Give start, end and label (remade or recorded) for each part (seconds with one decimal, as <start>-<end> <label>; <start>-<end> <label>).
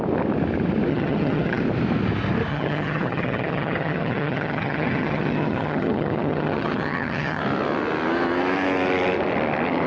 0.0-0.9 recorded; 0.9-1.6 remade; 1.6-2.5 recorded; 2.5-7.4 remade; 7.4-9.9 recorded